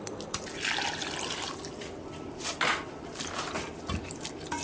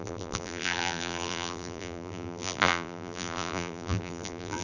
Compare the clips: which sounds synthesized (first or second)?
second